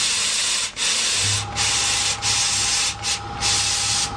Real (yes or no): yes